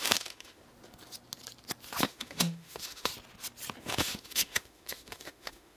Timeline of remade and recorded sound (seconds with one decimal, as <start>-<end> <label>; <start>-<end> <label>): 0.0-0.6 remade; 0.6-2.0 recorded; 2.0-3.1 remade; 3.1-3.8 recorded; 3.8-5.8 remade

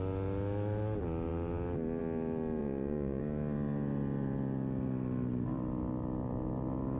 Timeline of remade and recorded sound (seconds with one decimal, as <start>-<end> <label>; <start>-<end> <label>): 0.0-2.6 recorded; 2.6-3.2 remade; 3.2-7.0 recorded

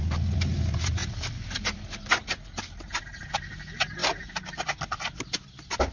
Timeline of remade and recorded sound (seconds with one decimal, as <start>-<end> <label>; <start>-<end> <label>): 0.0-4.0 remade; 4.0-5.9 recorded

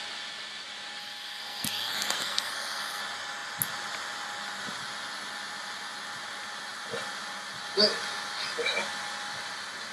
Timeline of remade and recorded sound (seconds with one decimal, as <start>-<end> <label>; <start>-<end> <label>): 0.0-1.0 recorded; 1.0-3.0 remade; 3.0-9.9 recorded